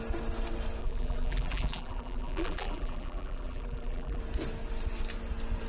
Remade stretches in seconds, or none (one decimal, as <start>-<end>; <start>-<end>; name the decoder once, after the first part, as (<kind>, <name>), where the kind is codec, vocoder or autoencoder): 0.8-4.2 (vocoder, BigVGAN v2)